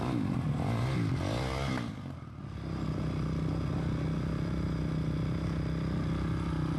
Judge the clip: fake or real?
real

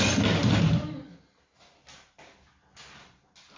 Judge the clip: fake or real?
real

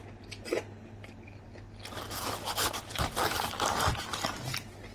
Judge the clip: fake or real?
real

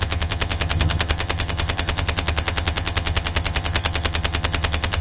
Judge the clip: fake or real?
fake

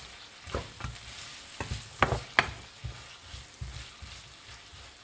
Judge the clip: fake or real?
real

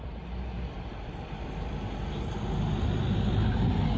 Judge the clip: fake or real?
real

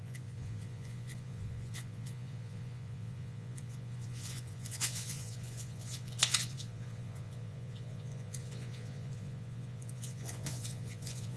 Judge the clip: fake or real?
fake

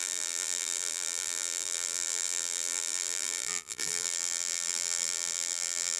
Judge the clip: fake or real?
fake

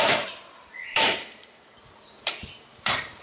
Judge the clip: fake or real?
fake